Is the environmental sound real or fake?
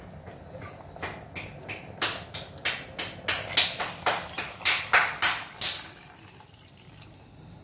real